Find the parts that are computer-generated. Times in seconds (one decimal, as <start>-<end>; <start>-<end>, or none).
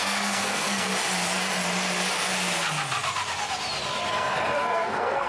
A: 0.0-0.9; 4.1-5.3